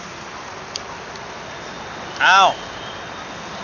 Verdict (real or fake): real